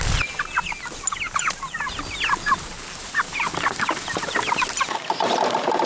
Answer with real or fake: real